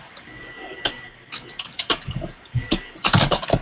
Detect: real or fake fake